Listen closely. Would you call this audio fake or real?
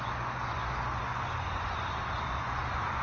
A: fake